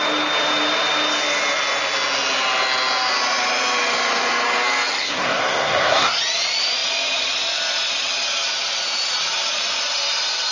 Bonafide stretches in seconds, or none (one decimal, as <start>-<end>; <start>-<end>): 0.0-5.0; 6.2-10.5